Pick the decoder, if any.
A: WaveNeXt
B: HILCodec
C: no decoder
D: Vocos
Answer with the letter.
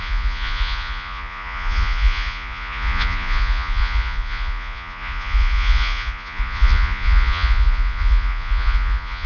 D